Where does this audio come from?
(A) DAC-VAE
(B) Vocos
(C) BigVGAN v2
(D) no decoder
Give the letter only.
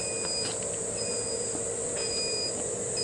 D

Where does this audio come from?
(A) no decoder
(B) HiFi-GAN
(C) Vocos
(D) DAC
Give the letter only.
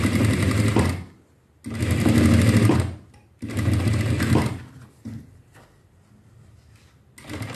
A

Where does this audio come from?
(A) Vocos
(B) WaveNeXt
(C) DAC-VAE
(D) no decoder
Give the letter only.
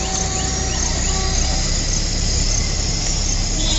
D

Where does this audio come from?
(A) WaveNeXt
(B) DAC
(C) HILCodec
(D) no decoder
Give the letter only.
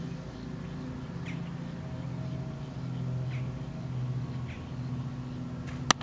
D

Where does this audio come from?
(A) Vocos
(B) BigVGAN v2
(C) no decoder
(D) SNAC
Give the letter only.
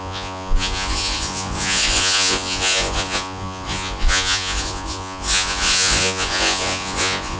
A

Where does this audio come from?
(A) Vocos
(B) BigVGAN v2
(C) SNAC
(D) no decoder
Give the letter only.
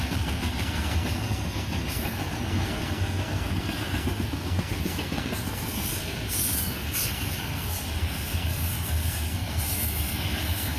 C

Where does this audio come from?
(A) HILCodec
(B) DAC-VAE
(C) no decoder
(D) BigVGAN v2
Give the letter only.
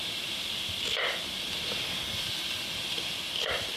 C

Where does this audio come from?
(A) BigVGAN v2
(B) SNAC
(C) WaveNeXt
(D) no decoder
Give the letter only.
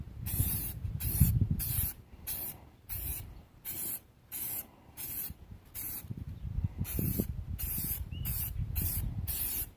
A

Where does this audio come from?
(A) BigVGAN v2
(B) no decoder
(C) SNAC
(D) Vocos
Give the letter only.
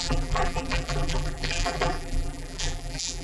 A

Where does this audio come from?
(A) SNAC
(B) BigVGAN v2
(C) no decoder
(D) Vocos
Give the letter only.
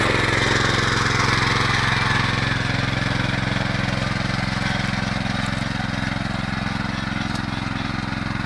C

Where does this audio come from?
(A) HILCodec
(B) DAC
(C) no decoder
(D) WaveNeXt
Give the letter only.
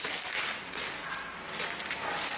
C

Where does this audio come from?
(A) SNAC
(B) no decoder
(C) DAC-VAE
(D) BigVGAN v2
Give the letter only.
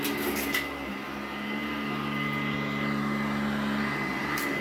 B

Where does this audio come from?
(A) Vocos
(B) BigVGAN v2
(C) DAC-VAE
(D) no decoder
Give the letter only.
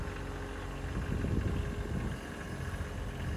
D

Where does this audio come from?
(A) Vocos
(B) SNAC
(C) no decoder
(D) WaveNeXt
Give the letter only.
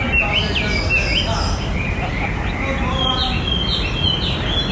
C